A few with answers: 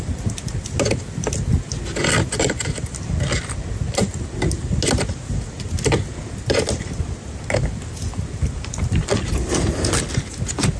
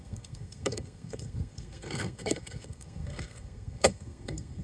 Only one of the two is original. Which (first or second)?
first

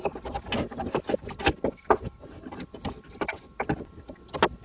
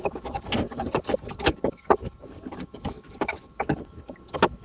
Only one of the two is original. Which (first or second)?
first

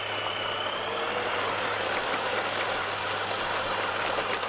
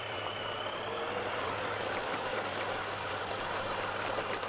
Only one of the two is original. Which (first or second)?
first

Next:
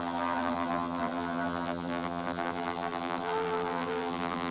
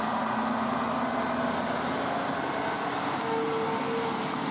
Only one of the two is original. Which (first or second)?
second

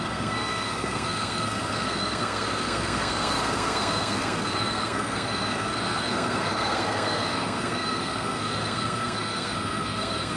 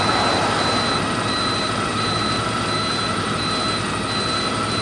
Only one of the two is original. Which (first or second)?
second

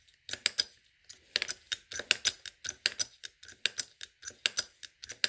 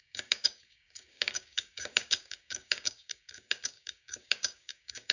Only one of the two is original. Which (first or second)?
first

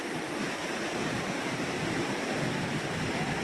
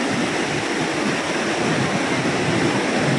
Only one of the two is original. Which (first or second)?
second